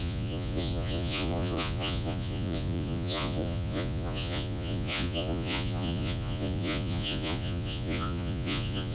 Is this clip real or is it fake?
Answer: fake